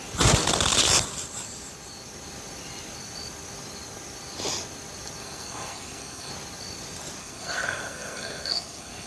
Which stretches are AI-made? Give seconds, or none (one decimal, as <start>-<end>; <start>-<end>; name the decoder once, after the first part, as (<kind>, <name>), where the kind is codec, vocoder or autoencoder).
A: 5.2-6.3 (codec, SNAC); 7.2-9.1